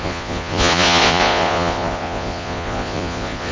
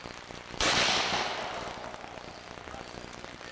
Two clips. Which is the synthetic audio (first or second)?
first